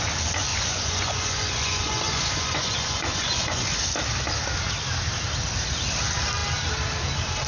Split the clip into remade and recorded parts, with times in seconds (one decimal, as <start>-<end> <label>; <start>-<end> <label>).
0.0-0.5 recorded; 0.5-3.7 remade; 3.7-7.5 recorded